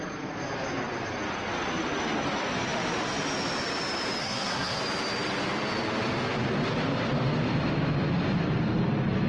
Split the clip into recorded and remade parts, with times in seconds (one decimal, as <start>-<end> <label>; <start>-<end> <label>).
0.0-4.2 recorded; 4.2-4.8 remade; 4.8-9.3 recorded